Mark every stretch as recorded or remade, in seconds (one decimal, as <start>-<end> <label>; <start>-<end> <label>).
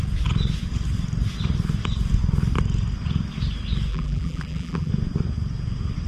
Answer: 0.0-3.9 recorded; 3.9-4.9 remade; 4.9-6.1 recorded